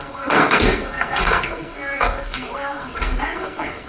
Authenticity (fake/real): fake